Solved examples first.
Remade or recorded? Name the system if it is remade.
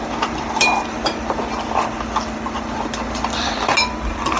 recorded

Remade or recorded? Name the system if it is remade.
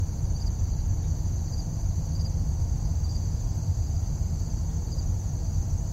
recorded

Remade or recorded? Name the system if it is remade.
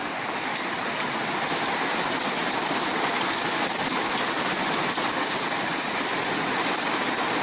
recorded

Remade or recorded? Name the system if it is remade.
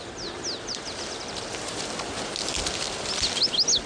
recorded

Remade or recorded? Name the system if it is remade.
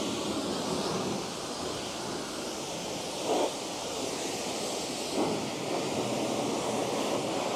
recorded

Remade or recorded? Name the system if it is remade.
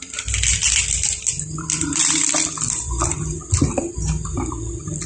remade, vocoder, BigVGAN v2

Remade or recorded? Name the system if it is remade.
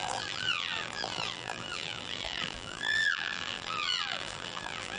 remade, vocoder, BigVGAN v2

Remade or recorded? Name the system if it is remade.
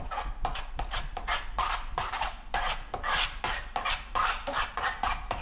remade, vocoder, BigVGAN v2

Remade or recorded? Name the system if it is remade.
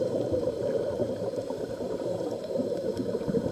remade, vocoder, BigVGAN v2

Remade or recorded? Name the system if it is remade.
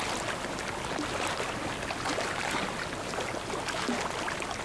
recorded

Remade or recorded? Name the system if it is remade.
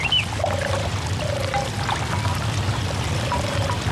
recorded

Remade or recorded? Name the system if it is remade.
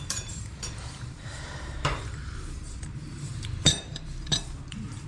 remade, vocoder, BigVGAN v2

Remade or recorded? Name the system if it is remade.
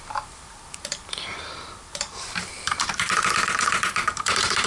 remade, vocoder, BigVGAN v2